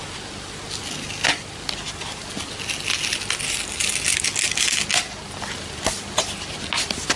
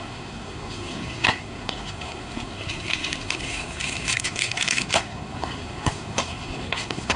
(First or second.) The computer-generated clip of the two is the second